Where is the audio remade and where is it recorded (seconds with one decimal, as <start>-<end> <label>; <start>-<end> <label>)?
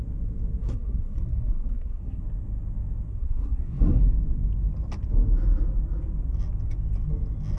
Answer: 0.0-0.6 recorded; 0.6-2.2 remade; 2.2-3.1 recorded; 3.1-4.0 remade; 4.0-7.6 recorded